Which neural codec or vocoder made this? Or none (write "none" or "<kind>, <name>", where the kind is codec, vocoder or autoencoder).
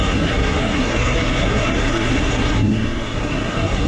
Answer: codec, SNAC